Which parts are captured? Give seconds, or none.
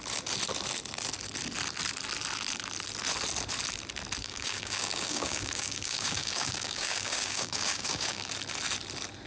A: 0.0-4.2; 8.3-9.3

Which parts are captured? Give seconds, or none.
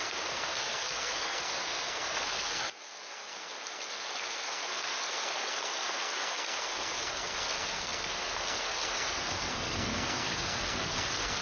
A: none